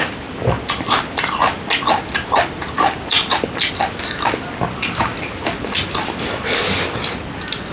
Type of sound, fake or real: real